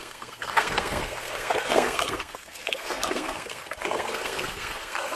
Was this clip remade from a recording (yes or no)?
yes